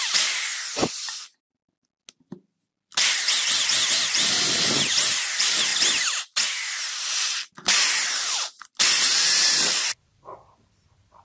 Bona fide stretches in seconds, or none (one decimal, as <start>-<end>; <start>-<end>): 0.0-0.8; 1.6-5.7; 10.4-11.2